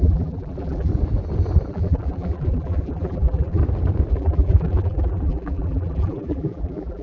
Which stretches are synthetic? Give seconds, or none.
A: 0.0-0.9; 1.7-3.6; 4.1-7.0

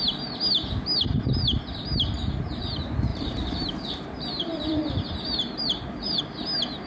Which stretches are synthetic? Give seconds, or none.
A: 3.1-6.2

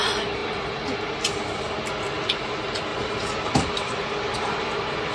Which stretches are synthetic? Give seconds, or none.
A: 2.9-5.1